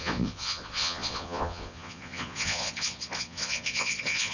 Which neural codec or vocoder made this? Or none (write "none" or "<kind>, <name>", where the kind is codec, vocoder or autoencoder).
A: vocoder, Vocos